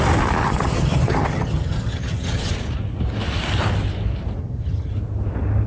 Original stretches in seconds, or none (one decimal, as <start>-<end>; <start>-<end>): 0.0-0.4; 2.5-4.4; 4.9-5.7